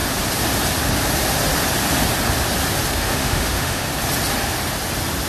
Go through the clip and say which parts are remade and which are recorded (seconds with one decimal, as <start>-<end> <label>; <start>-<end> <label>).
0.0-2.9 recorded; 2.9-3.9 remade; 3.9-5.3 recorded